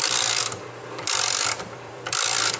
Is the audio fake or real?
fake